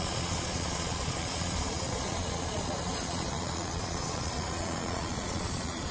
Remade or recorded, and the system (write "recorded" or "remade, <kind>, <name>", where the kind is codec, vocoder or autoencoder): remade, vocoder, Vocos